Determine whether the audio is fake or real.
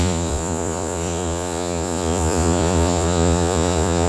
fake